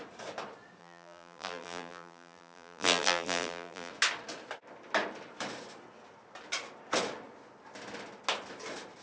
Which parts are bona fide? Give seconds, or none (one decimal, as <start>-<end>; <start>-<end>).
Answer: 0.0-0.8; 3.9-9.0